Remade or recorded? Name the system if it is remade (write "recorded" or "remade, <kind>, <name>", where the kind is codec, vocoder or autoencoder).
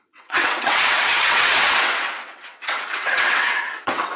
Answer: remade, vocoder, WaveNeXt